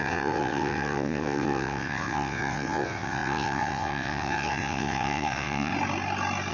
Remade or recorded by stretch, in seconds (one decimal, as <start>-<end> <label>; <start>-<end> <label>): 0.0-5.7 remade; 5.7-6.5 recorded